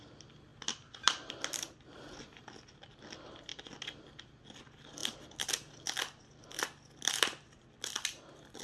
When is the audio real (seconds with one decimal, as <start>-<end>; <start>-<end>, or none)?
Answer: 0.0-8.6